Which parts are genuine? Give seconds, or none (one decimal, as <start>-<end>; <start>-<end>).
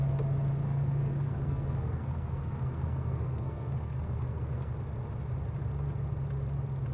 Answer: 0.0-0.6; 4.7-6.9